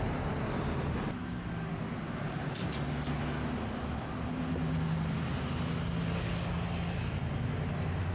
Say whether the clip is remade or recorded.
recorded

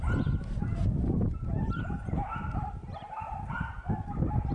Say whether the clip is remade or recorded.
recorded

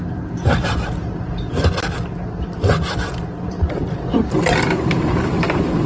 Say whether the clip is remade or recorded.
remade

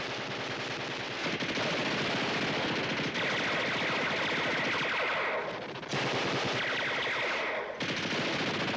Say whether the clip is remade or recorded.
recorded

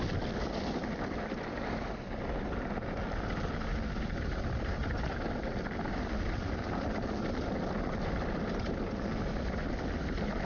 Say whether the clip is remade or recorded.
recorded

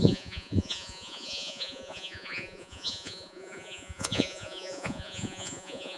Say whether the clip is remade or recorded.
remade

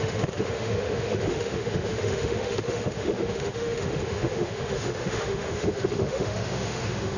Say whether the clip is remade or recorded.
remade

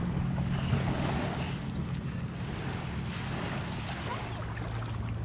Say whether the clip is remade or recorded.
recorded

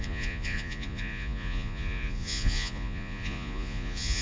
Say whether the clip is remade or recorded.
remade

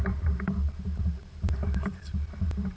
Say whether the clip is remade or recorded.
remade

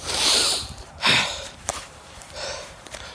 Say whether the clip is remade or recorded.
remade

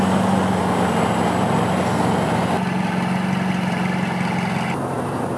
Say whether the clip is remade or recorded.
recorded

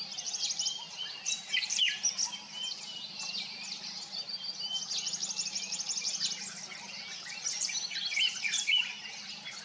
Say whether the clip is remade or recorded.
recorded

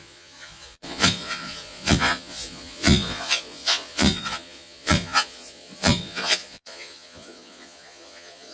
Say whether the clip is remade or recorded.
remade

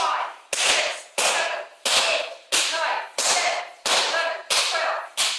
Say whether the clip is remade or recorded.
recorded